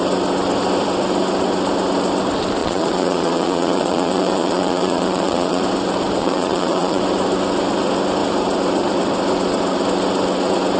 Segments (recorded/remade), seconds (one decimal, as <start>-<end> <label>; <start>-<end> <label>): 0.0-2.6 recorded; 2.6-5.6 remade; 5.6-6.2 recorded; 6.2-7.0 remade; 7.0-10.8 recorded

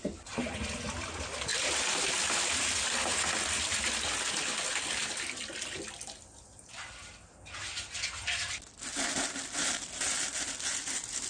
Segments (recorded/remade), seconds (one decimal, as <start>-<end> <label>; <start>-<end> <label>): 0.0-11.3 recorded

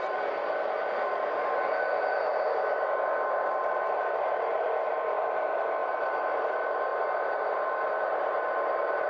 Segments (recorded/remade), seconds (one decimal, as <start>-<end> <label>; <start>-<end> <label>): 0.0-2.3 remade; 2.3-3.3 recorded; 3.3-6.9 remade; 6.9-7.9 recorded; 7.9-9.1 remade

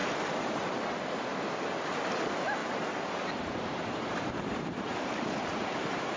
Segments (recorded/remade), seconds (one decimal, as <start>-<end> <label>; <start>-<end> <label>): 0.0-0.8 remade; 0.8-2.6 recorded; 2.6-6.2 remade

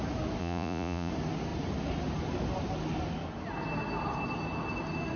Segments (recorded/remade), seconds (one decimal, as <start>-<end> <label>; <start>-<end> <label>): 0.0-0.4 recorded; 0.4-1.1 remade; 1.1-5.2 recorded

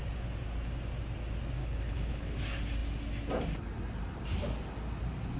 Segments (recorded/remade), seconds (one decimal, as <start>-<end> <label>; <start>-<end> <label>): 0.0-1.6 recorded; 1.6-2.3 remade; 2.3-5.4 recorded

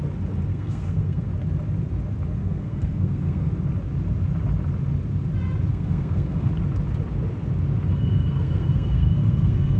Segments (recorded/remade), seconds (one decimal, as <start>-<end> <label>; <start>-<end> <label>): 0.0-0.5 recorded; 0.5-1.3 remade; 1.3-2.4 recorded; 2.4-3.5 remade; 3.5-5.7 recorded; 5.7-6.5 remade; 6.5-7.9 recorded; 7.9-9.8 remade

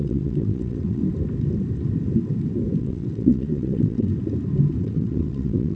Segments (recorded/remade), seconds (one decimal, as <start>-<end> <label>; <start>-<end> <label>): 0.0-1.0 remade; 1.0-2.8 recorded; 2.8-4.1 remade; 4.1-4.8 recorded; 4.8-5.8 remade